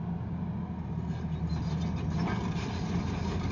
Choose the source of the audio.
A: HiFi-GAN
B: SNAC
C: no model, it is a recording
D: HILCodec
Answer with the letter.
C